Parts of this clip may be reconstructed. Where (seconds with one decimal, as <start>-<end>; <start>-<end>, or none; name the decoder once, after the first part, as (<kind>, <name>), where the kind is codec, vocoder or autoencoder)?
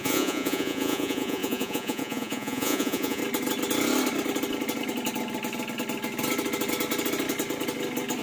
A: 0.0-3.2 (vocoder, Vocos)